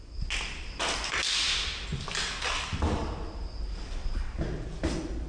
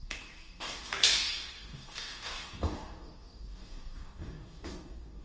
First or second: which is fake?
second